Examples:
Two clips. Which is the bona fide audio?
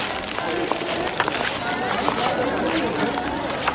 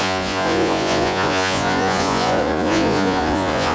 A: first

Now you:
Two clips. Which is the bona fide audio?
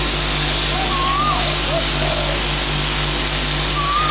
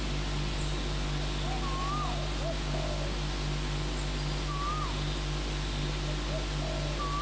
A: second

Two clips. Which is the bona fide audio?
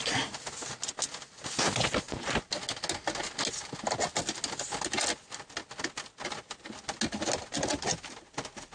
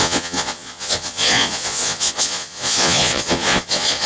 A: first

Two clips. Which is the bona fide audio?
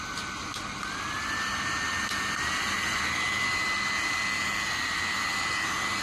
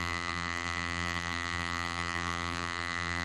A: first